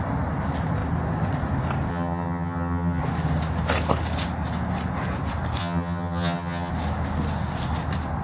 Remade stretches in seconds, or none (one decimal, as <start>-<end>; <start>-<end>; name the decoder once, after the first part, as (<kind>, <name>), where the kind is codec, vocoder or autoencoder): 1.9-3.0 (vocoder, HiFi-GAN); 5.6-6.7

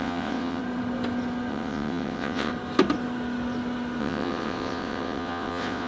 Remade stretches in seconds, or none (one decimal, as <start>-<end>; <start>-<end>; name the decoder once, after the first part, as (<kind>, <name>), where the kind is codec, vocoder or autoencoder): 0.0-0.6 (vocoder, WaveNeXt); 1.5-2.5; 4.0-5.9

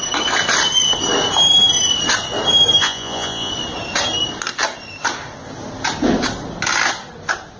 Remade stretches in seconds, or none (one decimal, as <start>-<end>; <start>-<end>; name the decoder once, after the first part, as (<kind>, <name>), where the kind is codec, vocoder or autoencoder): 2.8-3.5 (vocoder, Vocos)